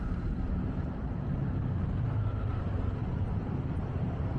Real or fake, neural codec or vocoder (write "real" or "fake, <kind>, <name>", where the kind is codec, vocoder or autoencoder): fake, vocoder, BigVGAN v2